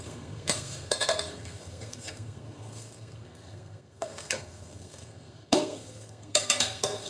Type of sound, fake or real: fake